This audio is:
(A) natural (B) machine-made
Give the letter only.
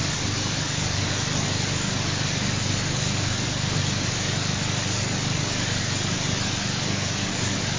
B